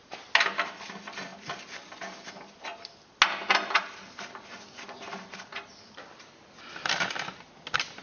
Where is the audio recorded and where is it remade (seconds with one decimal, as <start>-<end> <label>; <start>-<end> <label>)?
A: 0.0-8.0 recorded